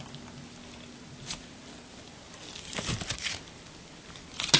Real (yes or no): yes